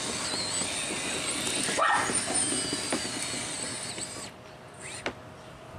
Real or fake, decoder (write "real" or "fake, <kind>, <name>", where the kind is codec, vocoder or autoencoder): real